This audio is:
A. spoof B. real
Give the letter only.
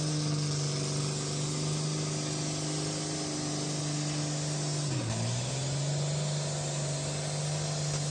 B